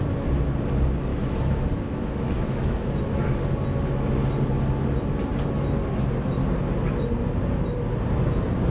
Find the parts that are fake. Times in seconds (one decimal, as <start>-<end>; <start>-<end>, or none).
1.1-2.9